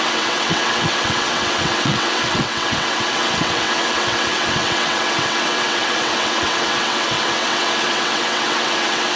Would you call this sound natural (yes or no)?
no